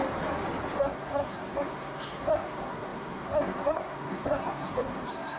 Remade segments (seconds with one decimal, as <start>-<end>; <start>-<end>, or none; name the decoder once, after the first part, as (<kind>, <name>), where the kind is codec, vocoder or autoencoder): 0.8-5.4 (codec, SNAC)